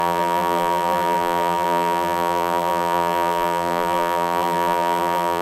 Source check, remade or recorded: remade